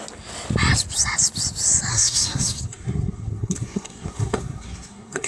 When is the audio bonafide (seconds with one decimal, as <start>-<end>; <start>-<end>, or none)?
0.0-1.9